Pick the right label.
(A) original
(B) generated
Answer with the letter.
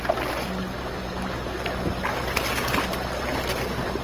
A